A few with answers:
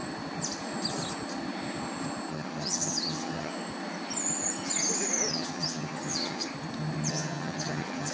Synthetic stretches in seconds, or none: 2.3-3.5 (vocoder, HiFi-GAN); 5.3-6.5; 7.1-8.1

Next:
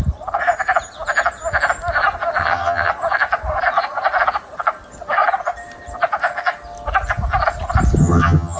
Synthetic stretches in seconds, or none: 2.4-2.9 (vocoder, HiFi-GAN); 8.0-8.6

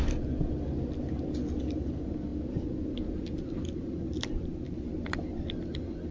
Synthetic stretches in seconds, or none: none

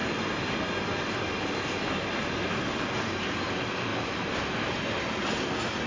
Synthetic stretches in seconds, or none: none

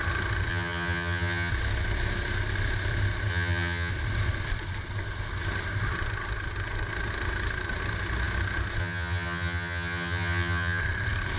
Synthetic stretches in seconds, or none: 0.5-1.5 (vocoder, HiFi-GAN); 3.3-3.9; 8.8-10.8